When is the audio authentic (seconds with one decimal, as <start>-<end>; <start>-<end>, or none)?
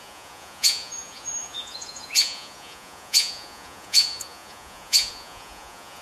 none